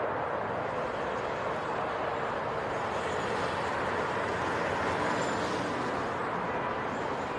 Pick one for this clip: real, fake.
real